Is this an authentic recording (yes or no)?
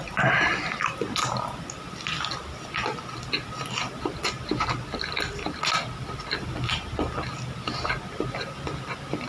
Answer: yes